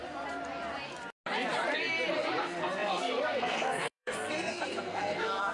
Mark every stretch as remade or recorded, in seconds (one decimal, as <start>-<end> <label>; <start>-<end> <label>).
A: 0.0-2.4 recorded; 2.4-5.5 remade